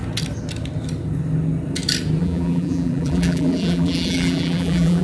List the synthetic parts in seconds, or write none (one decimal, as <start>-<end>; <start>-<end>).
2.2-5.0